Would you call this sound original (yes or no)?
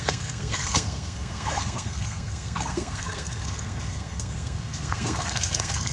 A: no